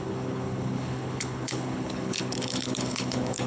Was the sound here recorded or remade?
remade